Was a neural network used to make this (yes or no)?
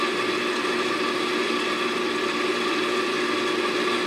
no